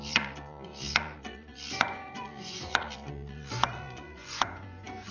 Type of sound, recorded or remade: remade